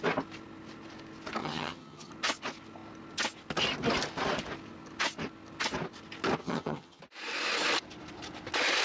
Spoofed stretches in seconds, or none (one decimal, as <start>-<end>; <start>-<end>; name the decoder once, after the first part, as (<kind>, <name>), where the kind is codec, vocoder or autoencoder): 1.4-2.1 (vocoder, HiFi-GAN); 6.4-7.0

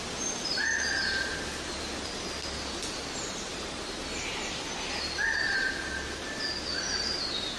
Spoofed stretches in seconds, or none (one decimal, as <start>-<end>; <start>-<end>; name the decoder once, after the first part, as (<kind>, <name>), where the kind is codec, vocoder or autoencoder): none

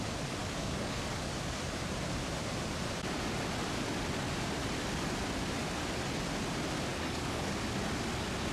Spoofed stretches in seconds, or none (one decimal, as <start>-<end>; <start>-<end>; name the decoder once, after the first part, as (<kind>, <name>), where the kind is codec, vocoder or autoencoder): 0.4-1.7 (codec, DAC); 6.9-7.5

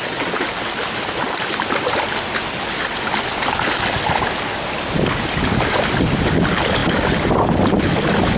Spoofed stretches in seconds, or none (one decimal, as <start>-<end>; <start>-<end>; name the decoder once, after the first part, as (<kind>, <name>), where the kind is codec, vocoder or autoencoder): none

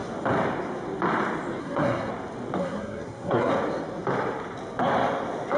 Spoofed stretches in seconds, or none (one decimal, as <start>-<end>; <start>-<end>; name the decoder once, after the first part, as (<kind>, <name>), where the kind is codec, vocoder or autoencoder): 1.6-2.1 (codec, SNAC); 2.6-3.5

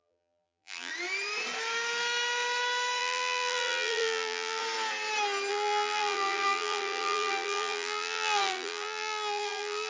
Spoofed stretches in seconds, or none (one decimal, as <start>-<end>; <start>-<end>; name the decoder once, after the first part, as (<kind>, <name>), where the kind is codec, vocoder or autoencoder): 0.0-0.9 (vocoder, BigVGAN v2); 3.0-4.6; 5.5-9.9

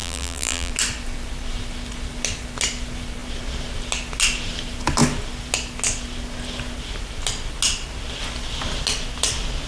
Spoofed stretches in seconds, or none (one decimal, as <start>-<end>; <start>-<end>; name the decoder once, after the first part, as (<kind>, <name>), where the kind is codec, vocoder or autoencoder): 0.0-0.7 (vocoder, BigVGAN v2)

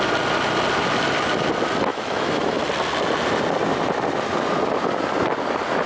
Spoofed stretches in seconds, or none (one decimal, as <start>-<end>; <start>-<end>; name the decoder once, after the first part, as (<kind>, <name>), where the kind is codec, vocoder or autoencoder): 1.9-2.6 (autoencoder, DAC-VAE)